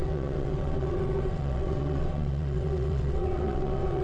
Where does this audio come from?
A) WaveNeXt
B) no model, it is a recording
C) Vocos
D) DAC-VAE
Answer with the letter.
A